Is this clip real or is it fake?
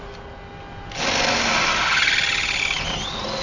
real